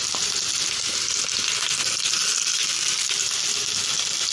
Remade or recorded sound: recorded